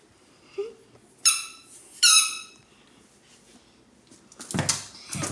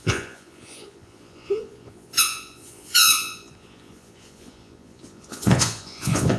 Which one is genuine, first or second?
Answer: first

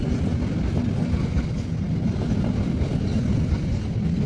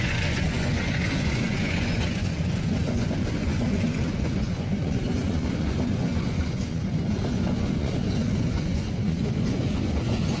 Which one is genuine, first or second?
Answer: first